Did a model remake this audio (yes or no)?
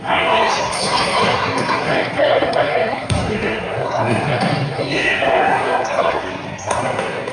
yes